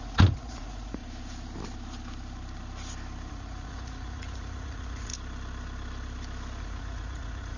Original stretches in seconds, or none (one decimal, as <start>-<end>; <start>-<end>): 1.0-3.3; 5.1-6.6